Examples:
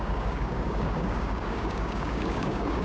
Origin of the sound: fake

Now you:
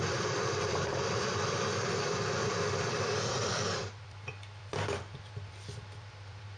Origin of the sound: fake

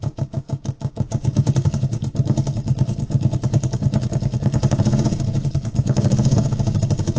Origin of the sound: fake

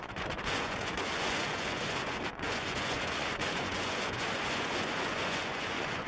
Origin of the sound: fake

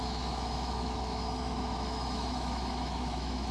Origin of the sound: fake